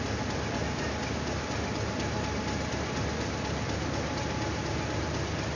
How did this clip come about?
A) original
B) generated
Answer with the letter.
A